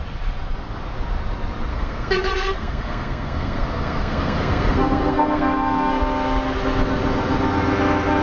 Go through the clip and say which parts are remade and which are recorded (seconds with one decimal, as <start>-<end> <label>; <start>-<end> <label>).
0.0-1.7 recorded; 1.7-6.0 remade; 6.0-8.2 recorded